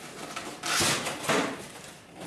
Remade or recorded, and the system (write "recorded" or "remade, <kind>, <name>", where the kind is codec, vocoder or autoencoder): recorded